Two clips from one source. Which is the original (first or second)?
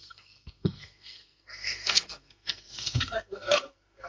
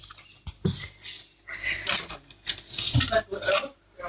second